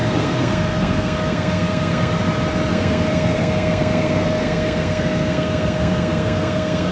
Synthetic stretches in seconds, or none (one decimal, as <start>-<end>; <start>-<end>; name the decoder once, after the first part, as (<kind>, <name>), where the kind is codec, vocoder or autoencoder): 0.0-2.1 (codec, SNAC); 2.7-6.9